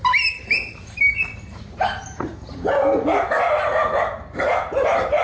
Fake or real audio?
real